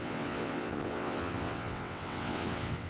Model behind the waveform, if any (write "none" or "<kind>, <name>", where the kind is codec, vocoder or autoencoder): vocoder, WaveNeXt